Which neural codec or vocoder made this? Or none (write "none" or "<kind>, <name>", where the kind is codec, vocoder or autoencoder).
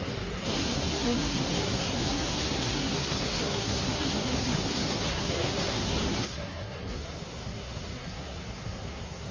codec, SNAC